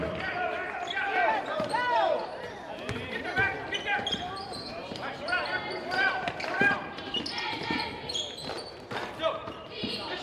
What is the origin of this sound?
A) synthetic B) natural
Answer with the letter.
A